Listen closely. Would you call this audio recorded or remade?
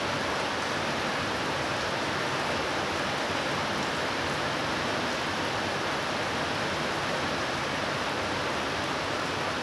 recorded